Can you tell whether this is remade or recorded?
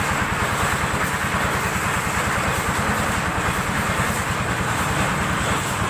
recorded